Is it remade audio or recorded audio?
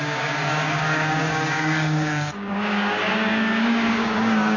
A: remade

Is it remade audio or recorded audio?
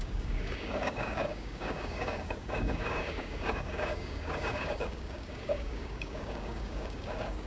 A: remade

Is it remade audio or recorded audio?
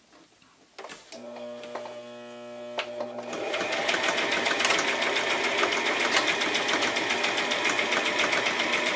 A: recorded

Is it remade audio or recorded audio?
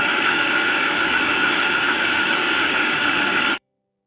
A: remade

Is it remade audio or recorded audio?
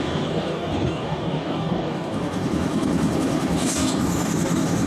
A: remade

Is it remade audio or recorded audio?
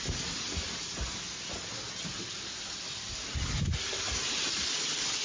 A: recorded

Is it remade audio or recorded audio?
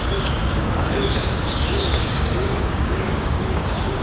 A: remade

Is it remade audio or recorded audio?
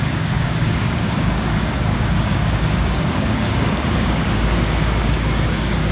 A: remade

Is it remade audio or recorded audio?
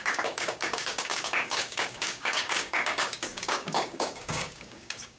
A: remade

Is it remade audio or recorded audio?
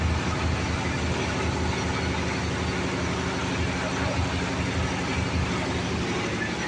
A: recorded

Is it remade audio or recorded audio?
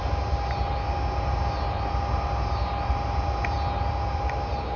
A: recorded